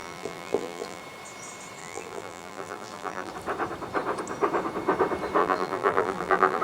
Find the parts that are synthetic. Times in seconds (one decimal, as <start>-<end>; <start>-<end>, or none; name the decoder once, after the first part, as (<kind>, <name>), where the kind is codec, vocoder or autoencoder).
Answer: 0.0-1.0 (vocoder, BigVGAN v2); 1.8-3.3; 5.4-6.6